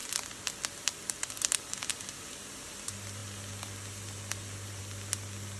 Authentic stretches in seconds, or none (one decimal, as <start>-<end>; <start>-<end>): 0.0-5.6